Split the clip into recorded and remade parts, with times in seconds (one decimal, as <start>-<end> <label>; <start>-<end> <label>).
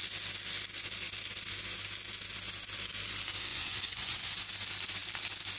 0.0-3.5 recorded; 3.5-4.4 remade; 4.4-5.6 recorded